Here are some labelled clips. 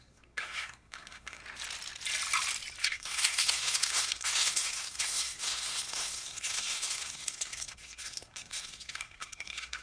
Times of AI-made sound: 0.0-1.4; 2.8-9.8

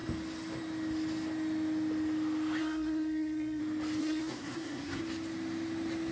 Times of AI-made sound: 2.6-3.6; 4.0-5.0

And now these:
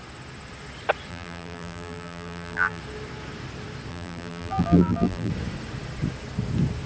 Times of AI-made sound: 1.1-2.8; 3.9-5.3

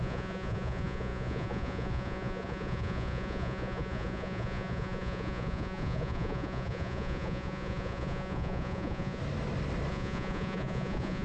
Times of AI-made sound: 0.0-9.2; 9.9-11.2

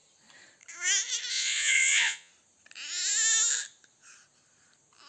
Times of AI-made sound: 1.3-2.3